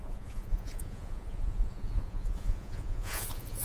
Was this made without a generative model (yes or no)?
no